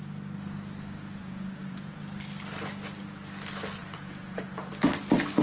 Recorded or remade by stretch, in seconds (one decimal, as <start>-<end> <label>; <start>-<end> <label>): 0.0-1.2 recorded; 1.2-2.0 remade; 2.0-3.8 recorded; 3.8-4.7 remade; 4.7-5.4 recorded